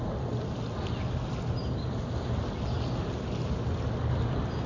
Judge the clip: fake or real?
real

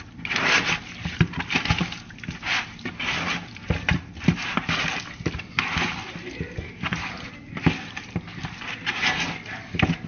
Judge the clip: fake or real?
real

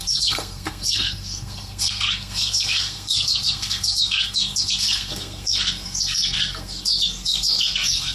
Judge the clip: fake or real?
fake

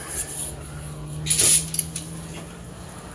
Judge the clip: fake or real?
real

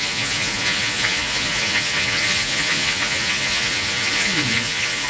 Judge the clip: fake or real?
fake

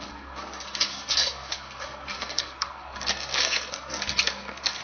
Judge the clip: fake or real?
fake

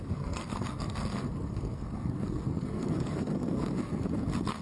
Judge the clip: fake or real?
fake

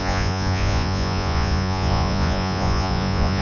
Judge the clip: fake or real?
fake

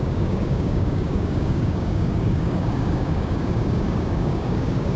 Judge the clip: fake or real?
fake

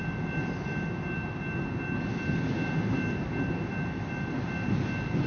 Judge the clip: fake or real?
real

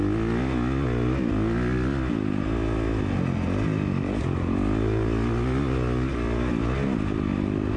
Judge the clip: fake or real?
real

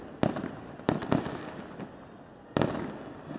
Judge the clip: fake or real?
real